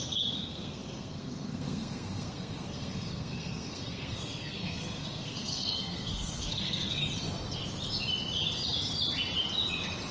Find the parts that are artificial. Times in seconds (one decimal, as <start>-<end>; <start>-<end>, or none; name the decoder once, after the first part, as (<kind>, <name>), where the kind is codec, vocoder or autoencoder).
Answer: 0.0-7.0 (codec, SNAC)